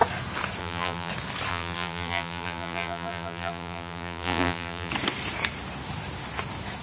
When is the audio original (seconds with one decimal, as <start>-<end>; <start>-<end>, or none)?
0.0-0.6; 1.1-1.5; 4.9-6.8